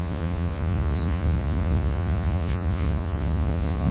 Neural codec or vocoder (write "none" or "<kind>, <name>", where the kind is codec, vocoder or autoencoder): vocoder, Vocos